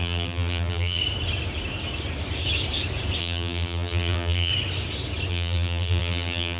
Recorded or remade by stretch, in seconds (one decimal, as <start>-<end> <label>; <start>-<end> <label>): 0.0-1.0 remade; 1.0-3.2 recorded; 3.2-4.5 remade; 4.5-5.3 recorded; 5.3-6.6 remade